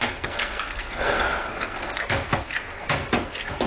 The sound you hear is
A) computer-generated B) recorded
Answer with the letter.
A